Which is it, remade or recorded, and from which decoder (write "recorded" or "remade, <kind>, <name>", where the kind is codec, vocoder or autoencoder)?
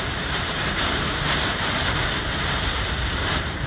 remade, vocoder, BigVGAN v2